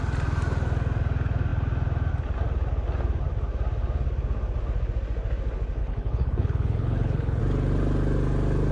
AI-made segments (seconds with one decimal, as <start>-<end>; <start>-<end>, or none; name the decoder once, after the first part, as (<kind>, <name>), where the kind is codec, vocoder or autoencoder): 5.8-7.4 (codec, HILCodec)